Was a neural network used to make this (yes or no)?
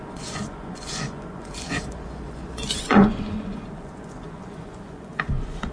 yes